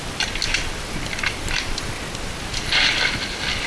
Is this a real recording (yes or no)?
yes